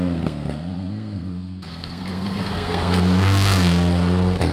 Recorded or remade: remade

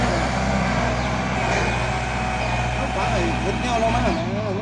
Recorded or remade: recorded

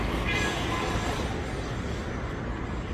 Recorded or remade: recorded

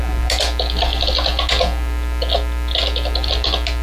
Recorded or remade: recorded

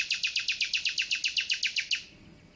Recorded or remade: recorded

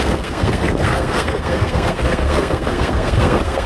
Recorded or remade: remade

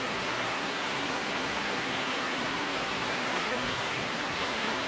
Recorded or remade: remade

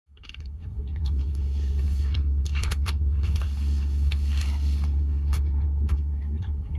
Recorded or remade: remade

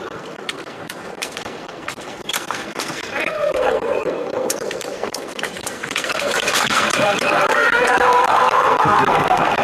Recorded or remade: remade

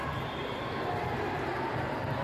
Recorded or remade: recorded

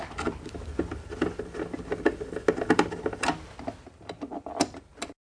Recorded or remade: recorded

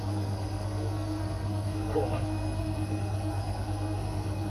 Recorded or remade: remade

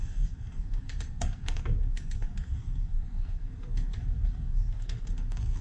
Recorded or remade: remade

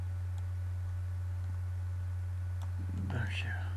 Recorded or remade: recorded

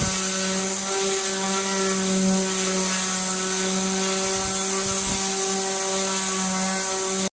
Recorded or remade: recorded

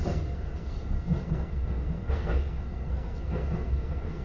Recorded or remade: remade